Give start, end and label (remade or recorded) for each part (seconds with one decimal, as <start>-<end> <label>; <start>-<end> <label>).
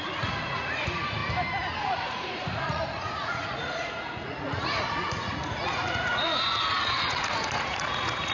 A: 0.0-1.2 remade; 1.2-1.8 recorded; 1.8-8.3 remade